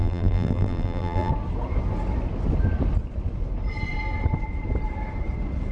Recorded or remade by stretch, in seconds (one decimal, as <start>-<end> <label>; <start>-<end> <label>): 0.0-1.3 remade; 1.3-5.7 recorded